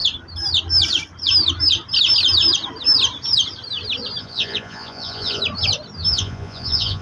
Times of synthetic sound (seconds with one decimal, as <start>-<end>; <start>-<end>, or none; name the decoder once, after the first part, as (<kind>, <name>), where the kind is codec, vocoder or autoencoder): 4.2-5.4 (vocoder, Vocos); 6.1-7.0